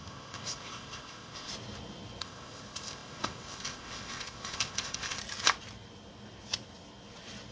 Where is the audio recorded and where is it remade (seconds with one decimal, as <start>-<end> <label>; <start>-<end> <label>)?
0.0-1.5 remade; 1.5-2.2 recorded; 2.2-5.2 remade; 5.2-7.5 recorded